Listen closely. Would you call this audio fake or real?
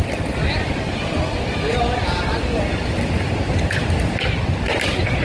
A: real